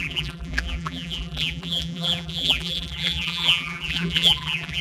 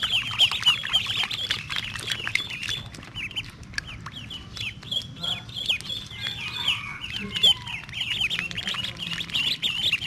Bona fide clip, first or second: second